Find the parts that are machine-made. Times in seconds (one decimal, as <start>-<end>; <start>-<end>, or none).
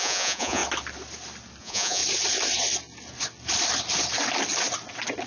0.0-0.6; 1.6-2.0